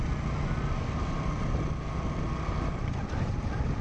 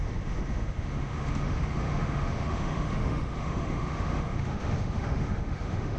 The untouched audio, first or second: first